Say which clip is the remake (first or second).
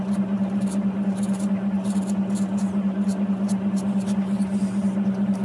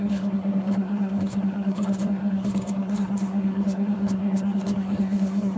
second